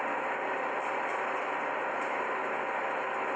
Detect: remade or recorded recorded